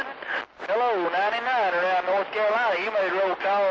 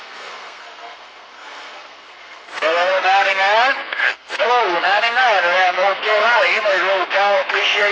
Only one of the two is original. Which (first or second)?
first